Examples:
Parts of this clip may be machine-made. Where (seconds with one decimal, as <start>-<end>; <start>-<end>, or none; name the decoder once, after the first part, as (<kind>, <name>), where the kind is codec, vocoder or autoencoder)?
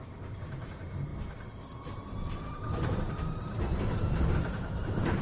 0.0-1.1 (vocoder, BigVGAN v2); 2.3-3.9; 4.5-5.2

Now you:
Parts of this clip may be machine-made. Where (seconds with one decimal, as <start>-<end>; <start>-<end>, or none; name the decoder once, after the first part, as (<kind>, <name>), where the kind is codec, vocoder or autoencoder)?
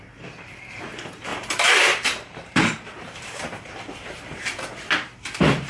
1.3-4.7 (vocoder, BigVGAN v2)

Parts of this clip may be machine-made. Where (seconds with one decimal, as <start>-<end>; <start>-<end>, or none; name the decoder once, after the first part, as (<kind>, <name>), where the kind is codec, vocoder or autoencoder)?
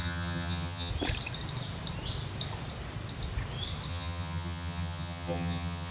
0.0-0.9 (vocoder, HiFi-GAN); 3.9-5.9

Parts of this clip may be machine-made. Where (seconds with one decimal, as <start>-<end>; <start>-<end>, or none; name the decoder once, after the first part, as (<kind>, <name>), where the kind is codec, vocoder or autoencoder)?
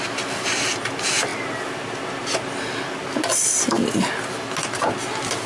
none